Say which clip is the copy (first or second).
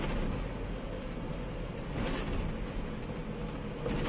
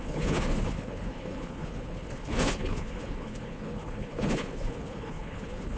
second